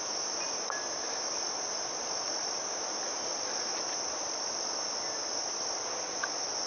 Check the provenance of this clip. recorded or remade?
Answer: recorded